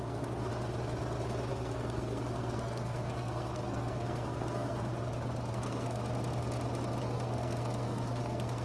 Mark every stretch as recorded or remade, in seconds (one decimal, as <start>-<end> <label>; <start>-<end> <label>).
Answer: 0.0-0.5 remade; 0.5-1.5 recorded; 1.5-4.9 remade; 4.9-5.5 recorded; 5.5-6.0 remade; 6.0-7.0 recorded; 7.0-8.6 remade